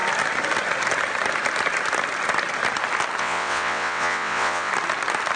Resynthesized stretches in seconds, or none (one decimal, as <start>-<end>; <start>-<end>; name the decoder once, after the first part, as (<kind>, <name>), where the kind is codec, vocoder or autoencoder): 3.2-4.7 (vocoder, WaveNeXt)